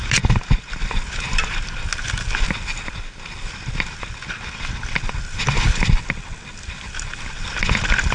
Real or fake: real